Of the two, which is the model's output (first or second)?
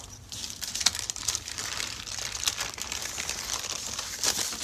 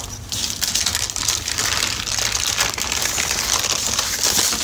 first